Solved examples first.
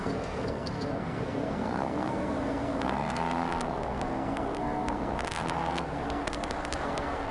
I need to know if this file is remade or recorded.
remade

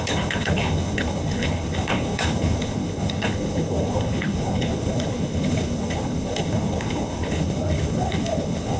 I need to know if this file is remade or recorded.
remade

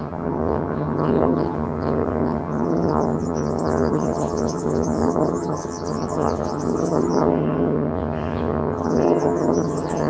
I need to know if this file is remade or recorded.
remade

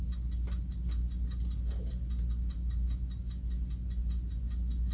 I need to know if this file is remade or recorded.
recorded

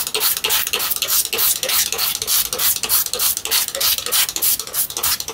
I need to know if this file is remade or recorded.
recorded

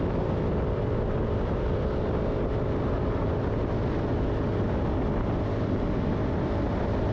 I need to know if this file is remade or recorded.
recorded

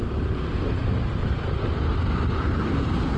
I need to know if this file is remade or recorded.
remade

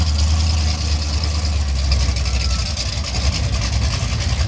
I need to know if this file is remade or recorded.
recorded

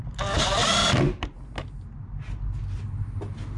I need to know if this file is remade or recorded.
recorded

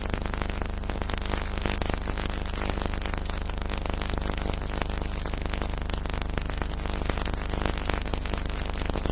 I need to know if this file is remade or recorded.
recorded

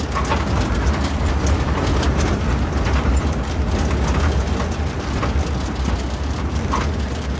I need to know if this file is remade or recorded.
recorded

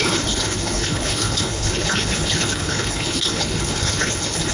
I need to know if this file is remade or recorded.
remade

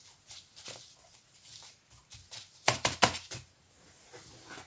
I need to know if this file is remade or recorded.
recorded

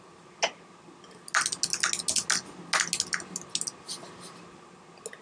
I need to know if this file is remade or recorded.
recorded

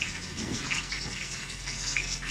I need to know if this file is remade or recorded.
remade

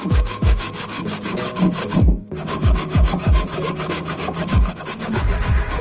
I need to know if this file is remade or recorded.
remade